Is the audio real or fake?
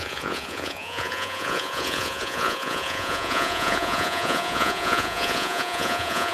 fake